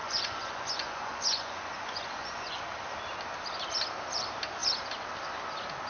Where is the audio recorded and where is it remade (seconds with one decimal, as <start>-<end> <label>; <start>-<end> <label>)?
0.0-2.6 remade; 2.6-5.9 recorded